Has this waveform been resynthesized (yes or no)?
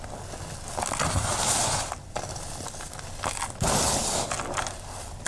no